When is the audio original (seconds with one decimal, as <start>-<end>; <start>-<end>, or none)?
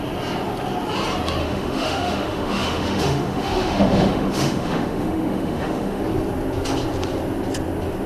0.0-1.4; 6.0-8.1